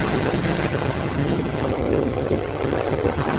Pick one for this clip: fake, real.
fake